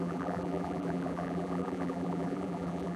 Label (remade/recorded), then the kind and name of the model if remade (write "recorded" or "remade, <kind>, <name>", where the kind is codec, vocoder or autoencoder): remade, vocoder, BigVGAN v2